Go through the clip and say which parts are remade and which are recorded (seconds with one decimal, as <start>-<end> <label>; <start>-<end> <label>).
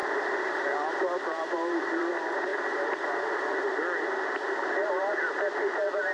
0.0-2.5 remade; 2.5-4.9 recorded; 4.9-6.1 remade